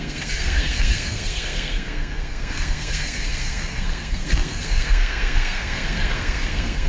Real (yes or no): no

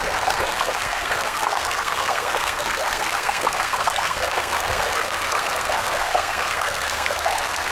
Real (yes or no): no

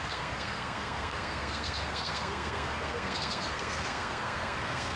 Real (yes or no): no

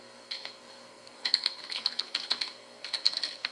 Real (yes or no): no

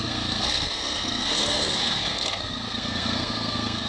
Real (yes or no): no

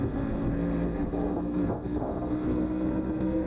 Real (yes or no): no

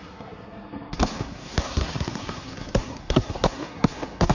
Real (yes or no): no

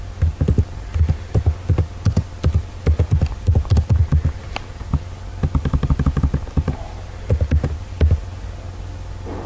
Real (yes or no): yes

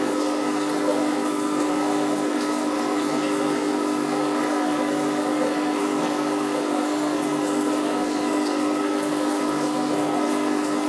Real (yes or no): no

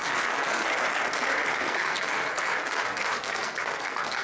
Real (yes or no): no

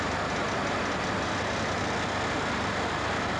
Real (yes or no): yes